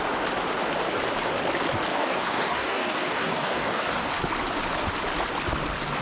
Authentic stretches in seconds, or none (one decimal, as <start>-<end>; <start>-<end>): 0.0-1.9; 4.1-6.0